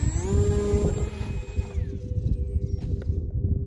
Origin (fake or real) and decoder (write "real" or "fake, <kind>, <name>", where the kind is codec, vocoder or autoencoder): real